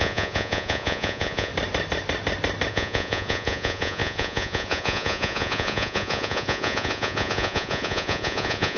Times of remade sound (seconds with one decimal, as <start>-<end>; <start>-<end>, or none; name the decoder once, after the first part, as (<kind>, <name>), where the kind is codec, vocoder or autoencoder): 0.0-1.5 (vocoder, Vocos); 2.7-8.8